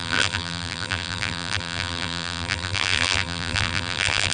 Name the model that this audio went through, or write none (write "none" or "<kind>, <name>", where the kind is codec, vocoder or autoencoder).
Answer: vocoder, BigVGAN v2